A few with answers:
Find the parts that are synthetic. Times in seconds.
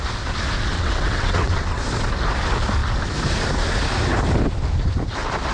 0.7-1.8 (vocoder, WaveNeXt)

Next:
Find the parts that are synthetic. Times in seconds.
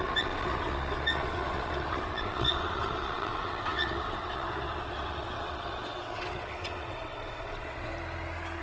0.0-7.9 (vocoder, WaveNeXt)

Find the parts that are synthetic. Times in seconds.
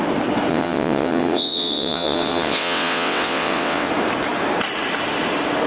0.5-3.9 (vocoder, WaveNeXt)